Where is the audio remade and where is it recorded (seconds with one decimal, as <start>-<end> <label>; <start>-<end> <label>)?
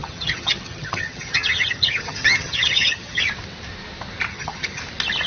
0.0-3.2 remade; 3.2-4.3 recorded; 4.3-4.8 remade; 4.8-5.3 recorded